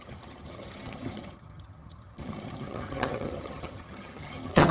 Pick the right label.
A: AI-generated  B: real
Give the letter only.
A